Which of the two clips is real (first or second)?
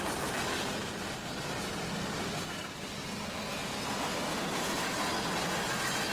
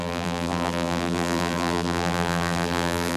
first